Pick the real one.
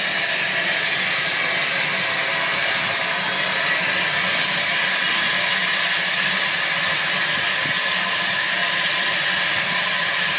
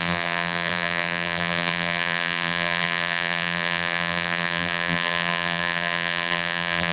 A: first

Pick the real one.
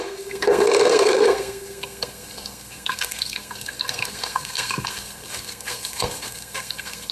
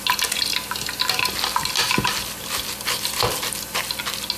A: second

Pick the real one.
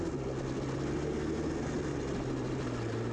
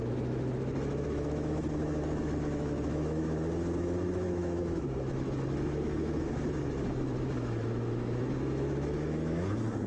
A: first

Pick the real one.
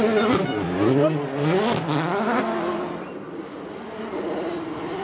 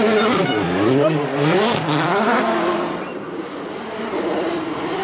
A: first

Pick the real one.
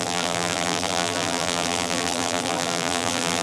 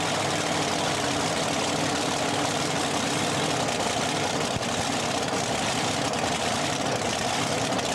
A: second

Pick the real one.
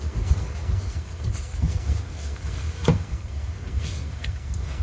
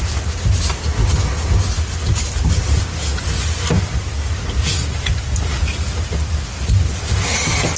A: second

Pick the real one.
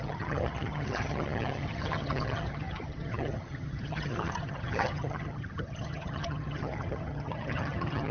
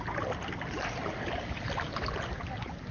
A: second